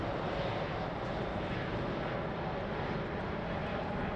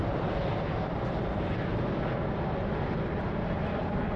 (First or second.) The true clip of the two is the first